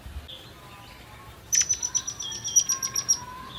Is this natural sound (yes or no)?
yes